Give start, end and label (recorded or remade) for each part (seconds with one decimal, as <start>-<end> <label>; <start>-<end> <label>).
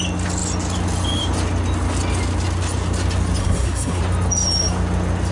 0.0-3.4 recorded; 3.4-4.0 remade; 4.0-5.3 recorded